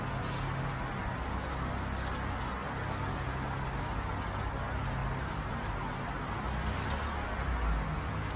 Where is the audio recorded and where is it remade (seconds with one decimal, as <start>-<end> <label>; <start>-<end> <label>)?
0.0-5.0 recorded; 5.0-6.5 remade; 6.5-8.4 recorded

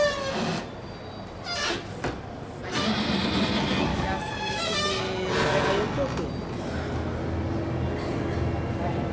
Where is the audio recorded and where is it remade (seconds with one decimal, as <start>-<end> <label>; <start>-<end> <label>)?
0.0-3.9 recorded; 3.9-4.6 remade; 4.6-9.1 recorded

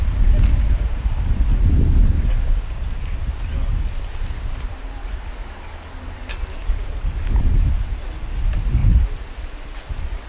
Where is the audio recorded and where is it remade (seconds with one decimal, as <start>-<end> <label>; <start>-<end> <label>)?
0.0-5.0 recorded; 5.0-7.6 remade; 7.6-10.3 recorded

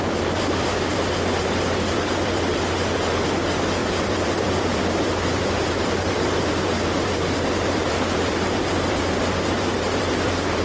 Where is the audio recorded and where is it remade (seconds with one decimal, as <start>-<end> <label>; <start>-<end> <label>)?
0.0-10.6 remade

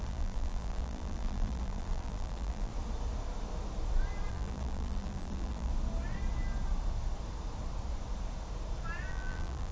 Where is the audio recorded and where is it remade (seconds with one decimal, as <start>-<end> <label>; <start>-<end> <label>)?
0.0-2.7 remade; 2.7-4.3 recorded; 4.3-5.7 remade; 5.7-9.1 recorded; 9.1-9.7 remade